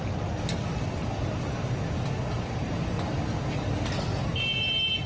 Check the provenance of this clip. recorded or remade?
recorded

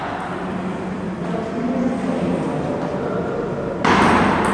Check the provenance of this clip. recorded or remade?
recorded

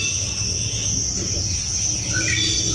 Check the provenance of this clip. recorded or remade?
recorded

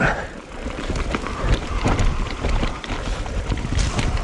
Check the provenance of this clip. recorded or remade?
remade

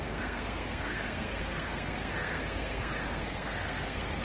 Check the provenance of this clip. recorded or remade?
remade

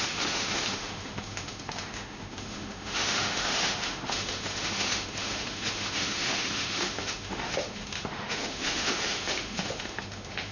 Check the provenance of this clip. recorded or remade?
remade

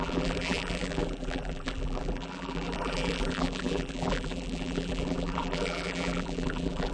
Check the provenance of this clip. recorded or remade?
remade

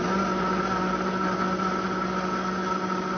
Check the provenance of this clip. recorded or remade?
recorded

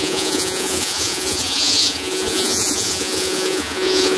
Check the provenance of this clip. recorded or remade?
remade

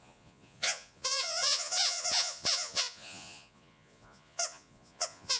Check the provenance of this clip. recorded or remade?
remade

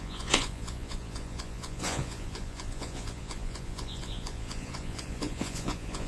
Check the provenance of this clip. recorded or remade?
remade